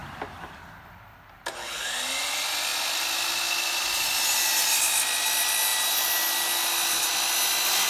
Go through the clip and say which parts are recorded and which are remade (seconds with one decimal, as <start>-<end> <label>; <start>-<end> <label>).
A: 0.0-7.9 recorded